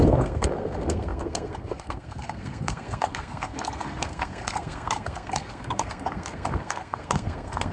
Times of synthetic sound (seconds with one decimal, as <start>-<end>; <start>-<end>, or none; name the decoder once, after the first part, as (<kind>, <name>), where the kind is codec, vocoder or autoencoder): 0.0-7.7 (codec, SNAC)